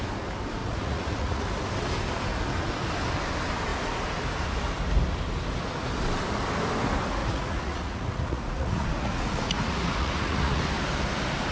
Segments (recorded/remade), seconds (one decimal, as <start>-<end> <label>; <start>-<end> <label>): 0.0-0.6 recorded; 0.6-1.5 remade; 1.5-7.2 recorded; 7.2-10.6 remade; 10.6-11.5 recorded